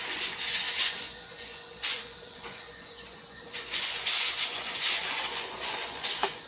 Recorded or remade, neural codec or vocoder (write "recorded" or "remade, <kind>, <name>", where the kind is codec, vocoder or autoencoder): remade, vocoder, Vocos